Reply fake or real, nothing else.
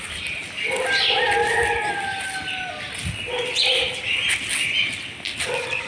real